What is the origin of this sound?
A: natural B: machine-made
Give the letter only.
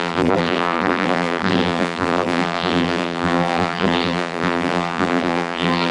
B